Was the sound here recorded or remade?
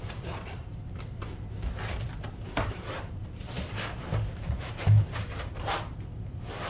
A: remade